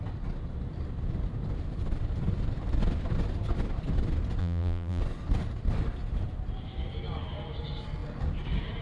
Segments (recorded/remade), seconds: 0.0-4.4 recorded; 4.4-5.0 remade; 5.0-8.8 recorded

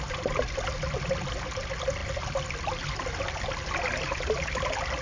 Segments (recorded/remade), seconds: 0.0-5.0 recorded

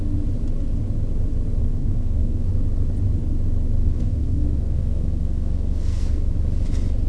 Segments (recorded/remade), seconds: 0.0-1.6 recorded; 1.6-2.5 remade; 2.5-3.8 recorded; 3.8-6.3 remade; 6.3-7.1 recorded

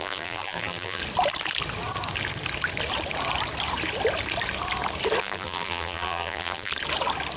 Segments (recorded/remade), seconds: 0.0-1.0 remade; 1.0-5.2 recorded; 5.2-6.7 remade; 6.7-7.4 recorded

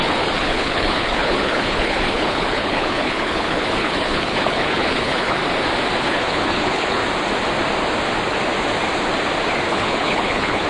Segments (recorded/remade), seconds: 0.0-5.4 remade; 5.4-6.0 recorded; 6.0-7.0 remade; 7.0-9.7 recorded; 9.7-10.7 remade

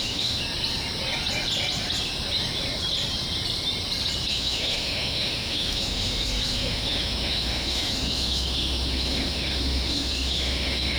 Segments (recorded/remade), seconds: 0.0-0.4 remade; 0.4-4.3 recorded; 4.3-11.0 remade

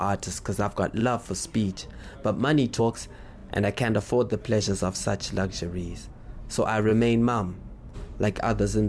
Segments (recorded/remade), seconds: 0.0-1.0 remade; 1.0-2.8 recorded; 2.8-3.4 remade; 3.4-6.1 recorded; 6.1-6.9 remade; 6.9-7.9 recorded; 7.9-8.9 remade

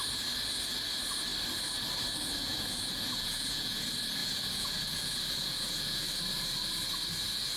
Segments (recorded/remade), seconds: 0.0-2.4 recorded; 2.4-3.8 remade; 3.8-4.2 recorded; 4.2-6.0 remade; 6.0-7.6 recorded